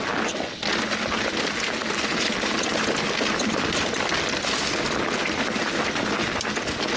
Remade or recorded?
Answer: recorded